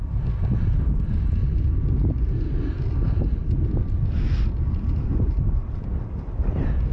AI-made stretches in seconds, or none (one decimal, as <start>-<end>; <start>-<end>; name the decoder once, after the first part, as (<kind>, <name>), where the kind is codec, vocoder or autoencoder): 5.6-6.4 (vocoder, BigVGAN v2)